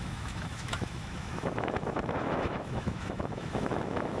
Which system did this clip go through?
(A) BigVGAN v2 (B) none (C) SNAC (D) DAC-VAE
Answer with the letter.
D